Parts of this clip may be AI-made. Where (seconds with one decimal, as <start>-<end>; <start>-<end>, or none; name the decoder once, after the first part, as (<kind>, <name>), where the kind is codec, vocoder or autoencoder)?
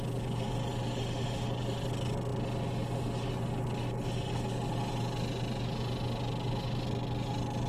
none